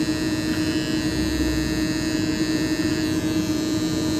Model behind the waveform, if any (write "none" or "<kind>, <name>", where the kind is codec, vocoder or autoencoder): none